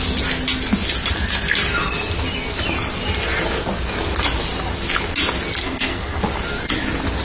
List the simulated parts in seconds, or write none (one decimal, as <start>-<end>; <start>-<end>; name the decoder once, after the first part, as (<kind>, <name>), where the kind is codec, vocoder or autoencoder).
5.6-6.2 (codec, SNAC)